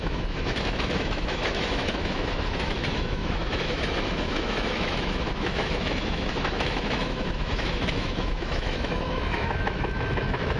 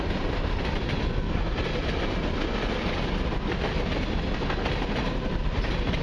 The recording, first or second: second